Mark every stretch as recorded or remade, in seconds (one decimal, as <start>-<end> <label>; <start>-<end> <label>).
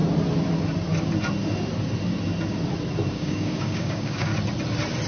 0.0-3.1 recorded; 3.1-4.3 remade; 4.3-5.1 recorded